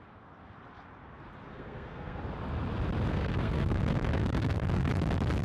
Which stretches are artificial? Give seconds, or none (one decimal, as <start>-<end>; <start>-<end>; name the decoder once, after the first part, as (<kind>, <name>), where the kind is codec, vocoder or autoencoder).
1.5-2.2 (codec, SNAC); 3.1-4.9

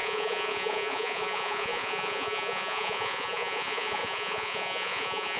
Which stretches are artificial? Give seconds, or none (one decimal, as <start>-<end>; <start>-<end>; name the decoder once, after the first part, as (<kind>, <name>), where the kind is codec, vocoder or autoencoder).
0.0-5.4 (vocoder, Vocos)

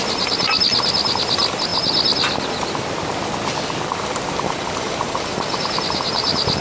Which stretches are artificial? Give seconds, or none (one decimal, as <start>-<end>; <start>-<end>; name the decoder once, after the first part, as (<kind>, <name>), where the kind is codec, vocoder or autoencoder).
none

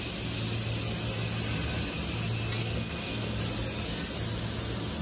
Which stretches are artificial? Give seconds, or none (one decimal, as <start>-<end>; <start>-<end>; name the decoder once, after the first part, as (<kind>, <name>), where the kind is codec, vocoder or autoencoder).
2.6-3.4 (codec, SNAC)

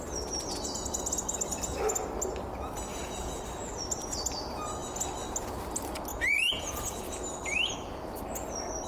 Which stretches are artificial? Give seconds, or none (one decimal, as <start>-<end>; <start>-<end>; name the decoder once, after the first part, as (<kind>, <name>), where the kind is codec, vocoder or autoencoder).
2.9-3.4 (vocoder, Vocos); 6.1-7.2